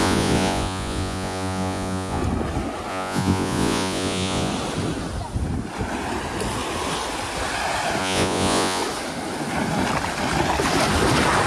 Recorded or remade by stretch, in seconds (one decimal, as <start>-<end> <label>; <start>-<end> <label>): 0.0-2.2 remade; 2.2-2.9 recorded; 2.9-4.5 remade; 4.5-8.0 recorded; 8.0-8.8 remade; 8.8-11.5 recorded